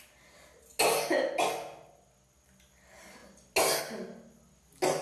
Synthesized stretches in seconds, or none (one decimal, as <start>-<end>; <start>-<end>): none